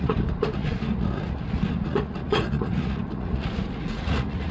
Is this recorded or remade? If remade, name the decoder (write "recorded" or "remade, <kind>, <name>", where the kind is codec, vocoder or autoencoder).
remade, vocoder, Vocos